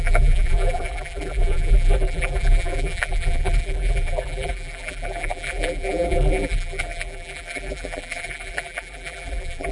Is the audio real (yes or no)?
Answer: no